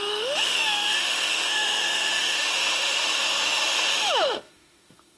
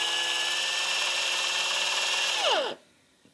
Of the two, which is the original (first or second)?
second